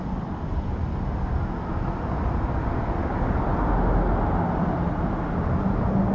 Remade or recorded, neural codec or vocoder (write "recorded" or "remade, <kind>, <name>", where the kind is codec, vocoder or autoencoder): recorded